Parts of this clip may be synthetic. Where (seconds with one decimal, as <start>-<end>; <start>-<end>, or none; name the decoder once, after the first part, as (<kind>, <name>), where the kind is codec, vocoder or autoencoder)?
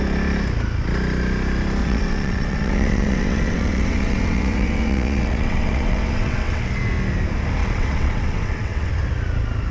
1.8-6.7 (vocoder, WaveNeXt); 7.6-8.9